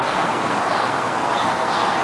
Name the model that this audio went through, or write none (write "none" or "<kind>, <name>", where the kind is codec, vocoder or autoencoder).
codec, SNAC